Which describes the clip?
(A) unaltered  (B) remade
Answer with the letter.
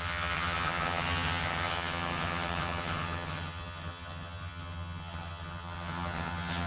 B